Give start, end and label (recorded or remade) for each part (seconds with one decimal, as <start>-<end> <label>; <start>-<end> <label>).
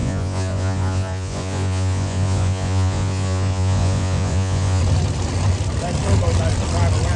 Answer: 0.0-4.8 remade; 4.8-7.2 recorded